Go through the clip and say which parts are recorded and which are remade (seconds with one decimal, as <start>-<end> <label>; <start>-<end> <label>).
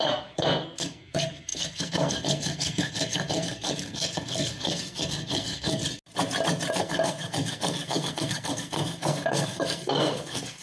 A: 0.0-5.8 remade; 5.8-6.7 recorded; 6.7-10.6 remade